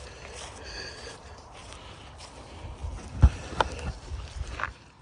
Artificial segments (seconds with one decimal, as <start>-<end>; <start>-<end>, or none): none